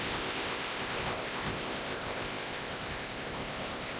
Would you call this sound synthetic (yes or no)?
yes